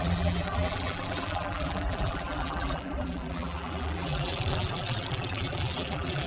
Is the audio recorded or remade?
remade